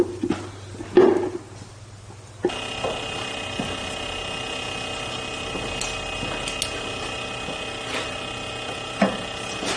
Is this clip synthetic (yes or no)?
no